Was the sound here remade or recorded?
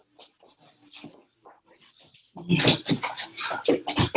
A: recorded